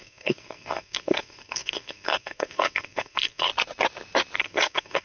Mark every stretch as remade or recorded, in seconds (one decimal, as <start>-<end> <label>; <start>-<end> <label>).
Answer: 0.0-3.5 remade; 3.5-4.4 recorded; 4.4-5.0 remade